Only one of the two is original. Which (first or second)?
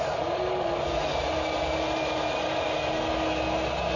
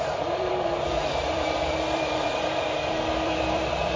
first